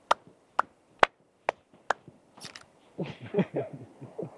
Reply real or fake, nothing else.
real